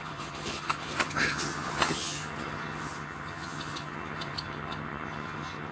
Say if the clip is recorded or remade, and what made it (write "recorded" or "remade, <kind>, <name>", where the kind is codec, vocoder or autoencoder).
remade, vocoder, HiFi-GAN